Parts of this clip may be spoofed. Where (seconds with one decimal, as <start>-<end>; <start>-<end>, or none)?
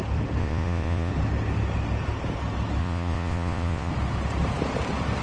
0.4-1.1; 2.8-3.9